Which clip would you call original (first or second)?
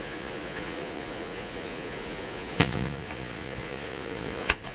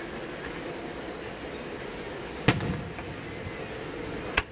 second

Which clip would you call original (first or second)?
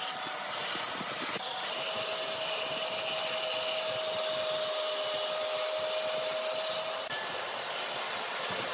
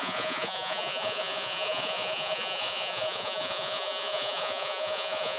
first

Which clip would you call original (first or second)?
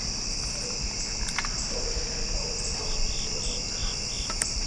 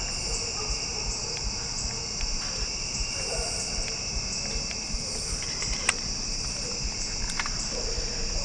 first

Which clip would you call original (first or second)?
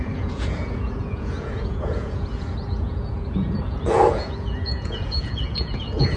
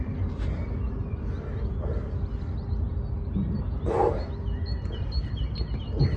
second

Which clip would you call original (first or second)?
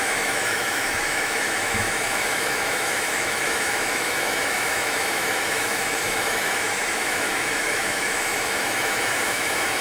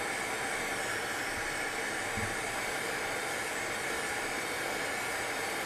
second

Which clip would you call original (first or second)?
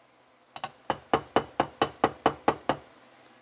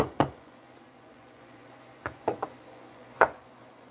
first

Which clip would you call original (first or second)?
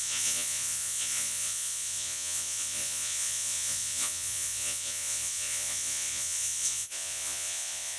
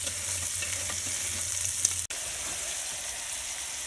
second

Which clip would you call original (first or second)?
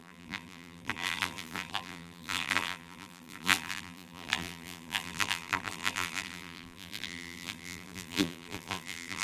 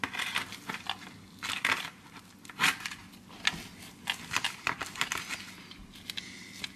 second